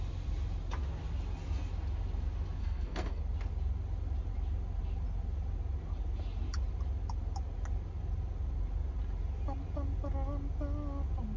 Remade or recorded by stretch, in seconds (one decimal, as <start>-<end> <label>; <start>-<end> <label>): 0.0-2.6 recorded; 2.6-3.2 remade; 3.2-11.4 recorded